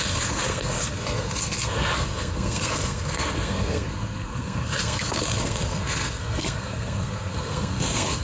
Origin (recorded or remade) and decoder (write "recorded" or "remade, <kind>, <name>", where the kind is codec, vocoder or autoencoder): remade, codec, SNAC